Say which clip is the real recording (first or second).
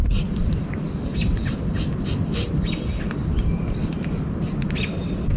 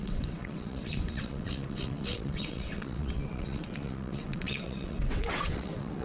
first